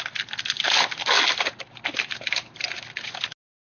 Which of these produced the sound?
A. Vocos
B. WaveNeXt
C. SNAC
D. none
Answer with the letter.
D